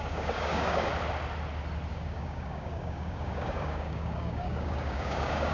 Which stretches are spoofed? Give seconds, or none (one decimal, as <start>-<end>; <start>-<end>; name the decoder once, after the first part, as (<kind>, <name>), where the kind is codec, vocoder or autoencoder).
0.0-0.9 (codec, DAC); 1.9-5.5